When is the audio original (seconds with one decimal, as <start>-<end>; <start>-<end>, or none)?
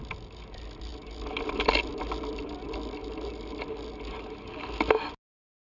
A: 0.0-5.7